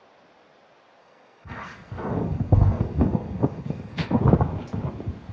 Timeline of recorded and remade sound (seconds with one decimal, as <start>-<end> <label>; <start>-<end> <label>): 0.0-1.0 recorded; 1.0-4.2 remade; 4.2-5.3 recorded